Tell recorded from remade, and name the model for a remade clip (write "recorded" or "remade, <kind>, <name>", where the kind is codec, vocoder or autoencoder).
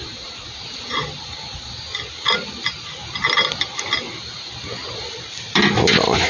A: recorded